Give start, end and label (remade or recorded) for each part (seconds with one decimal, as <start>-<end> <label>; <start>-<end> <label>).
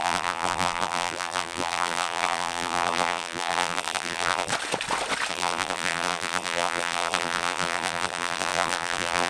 0.0-4.5 remade; 4.5-5.3 recorded; 5.3-9.3 remade